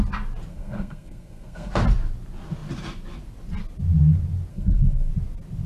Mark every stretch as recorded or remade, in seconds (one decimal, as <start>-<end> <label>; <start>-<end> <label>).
0.0-0.5 recorded; 0.5-1.7 remade; 1.7-4.5 recorded; 4.5-5.1 remade; 5.1-5.7 recorded